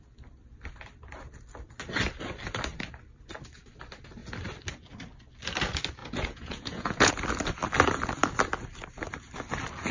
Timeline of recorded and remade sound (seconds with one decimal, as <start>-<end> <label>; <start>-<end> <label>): 0.0-6.0 recorded; 6.0-7.1 remade; 7.1-9.9 recorded